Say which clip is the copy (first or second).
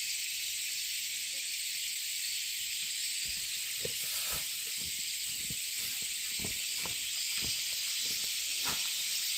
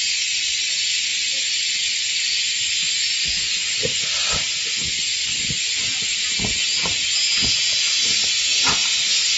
first